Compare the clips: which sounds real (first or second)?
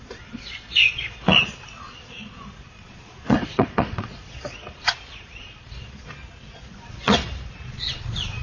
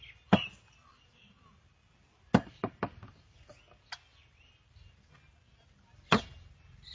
second